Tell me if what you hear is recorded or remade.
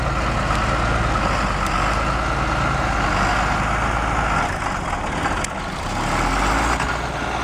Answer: recorded